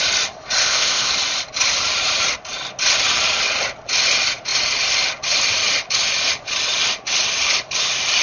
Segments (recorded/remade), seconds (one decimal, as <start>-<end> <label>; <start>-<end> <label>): 0.0-0.6 recorded; 0.6-1.1 remade; 1.1-8.2 recorded